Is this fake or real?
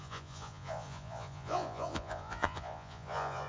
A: fake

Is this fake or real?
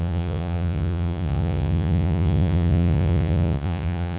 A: fake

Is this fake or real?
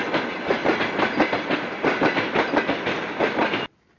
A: real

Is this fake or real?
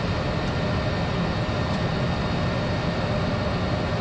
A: real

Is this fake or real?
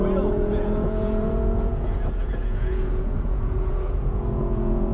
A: fake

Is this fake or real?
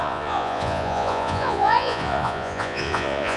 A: fake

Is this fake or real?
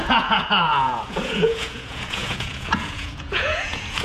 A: fake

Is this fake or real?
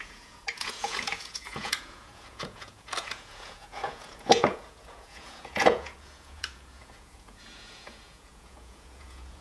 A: fake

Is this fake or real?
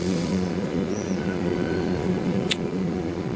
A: fake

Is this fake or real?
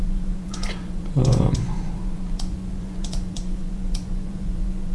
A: fake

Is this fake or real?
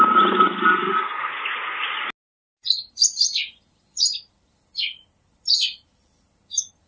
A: real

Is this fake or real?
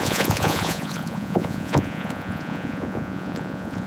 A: fake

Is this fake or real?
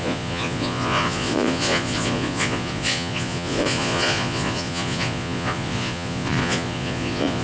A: fake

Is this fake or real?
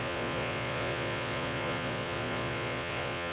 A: fake